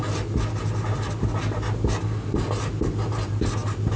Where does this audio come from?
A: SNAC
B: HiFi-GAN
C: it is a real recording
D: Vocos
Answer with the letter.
C